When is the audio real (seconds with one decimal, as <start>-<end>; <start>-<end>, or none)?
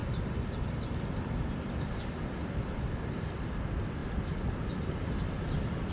0.0-4.0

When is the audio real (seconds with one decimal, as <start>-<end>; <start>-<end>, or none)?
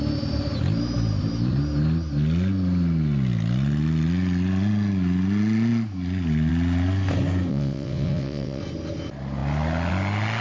0.0-7.5; 8.6-10.4